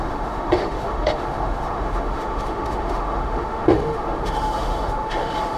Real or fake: fake